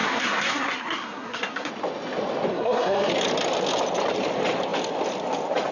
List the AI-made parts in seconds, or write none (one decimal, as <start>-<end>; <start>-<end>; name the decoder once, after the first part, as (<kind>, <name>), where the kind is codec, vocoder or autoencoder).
0.0-1.7 (codec, SNAC); 2.5-3.1